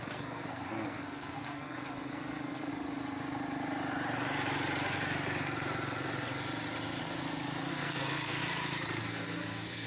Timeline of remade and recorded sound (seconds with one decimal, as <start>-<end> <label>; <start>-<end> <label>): 0.0-2.7 remade; 2.7-7.7 recorded; 7.7-8.4 remade; 8.4-9.0 recorded; 9.0-9.9 remade